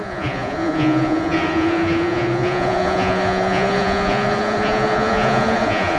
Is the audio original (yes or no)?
no